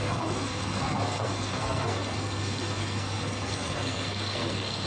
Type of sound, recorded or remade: remade